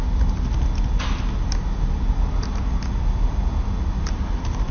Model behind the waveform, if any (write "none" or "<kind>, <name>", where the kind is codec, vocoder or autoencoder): none